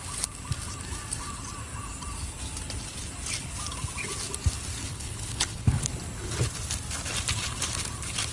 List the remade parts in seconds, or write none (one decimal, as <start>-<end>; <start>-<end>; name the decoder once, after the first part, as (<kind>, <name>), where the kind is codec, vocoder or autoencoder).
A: 4.8-5.9 (codec, HILCodec)